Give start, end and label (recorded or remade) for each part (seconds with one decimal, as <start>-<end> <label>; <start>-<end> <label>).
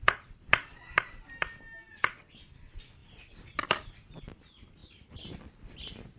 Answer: 0.0-6.2 recorded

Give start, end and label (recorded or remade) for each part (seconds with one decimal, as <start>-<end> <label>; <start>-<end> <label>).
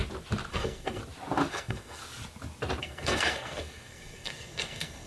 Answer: 0.0-0.5 recorded; 0.5-1.0 remade; 1.0-1.5 recorded; 1.5-2.0 remade; 2.0-2.8 recorded; 2.8-5.1 remade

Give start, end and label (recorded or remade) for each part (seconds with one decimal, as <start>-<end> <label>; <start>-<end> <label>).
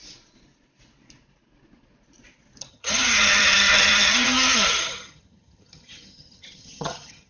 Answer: 0.0-2.7 recorded; 2.7-7.3 remade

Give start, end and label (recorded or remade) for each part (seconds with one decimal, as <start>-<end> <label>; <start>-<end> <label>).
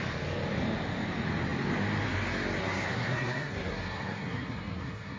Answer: 0.0-2.6 recorded; 2.6-5.2 remade